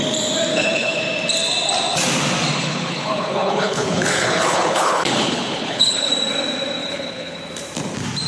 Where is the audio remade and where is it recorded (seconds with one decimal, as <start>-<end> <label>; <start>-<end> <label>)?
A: 0.0-0.5 recorded; 0.5-1.0 remade; 1.0-2.6 recorded; 2.6-6.1 remade; 6.1-6.8 recorded; 6.8-7.4 remade; 7.4-8.3 recorded